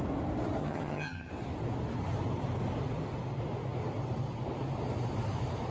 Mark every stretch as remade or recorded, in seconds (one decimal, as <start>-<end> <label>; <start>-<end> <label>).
0.0-0.6 recorded; 0.6-1.3 remade; 1.3-5.7 recorded